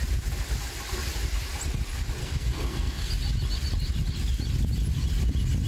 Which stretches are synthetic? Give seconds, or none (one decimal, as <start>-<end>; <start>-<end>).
2.2-3.1